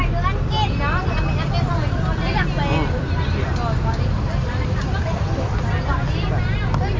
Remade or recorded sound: recorded